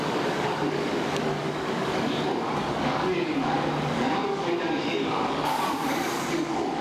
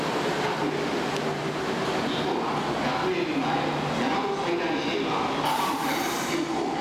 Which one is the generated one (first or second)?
first